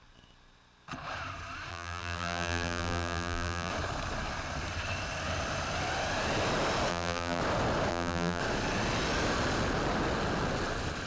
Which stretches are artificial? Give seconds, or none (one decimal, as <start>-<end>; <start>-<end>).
1.7-3.7; 6.9-7.4; 7.9-8.4